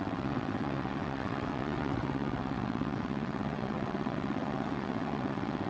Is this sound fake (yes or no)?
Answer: yes